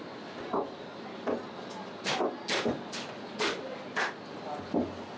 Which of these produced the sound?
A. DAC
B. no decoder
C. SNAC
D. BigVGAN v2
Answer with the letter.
B